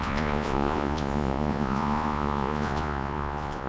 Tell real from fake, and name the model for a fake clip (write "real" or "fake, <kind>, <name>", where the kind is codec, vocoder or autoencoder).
fake, vocoder, Vocos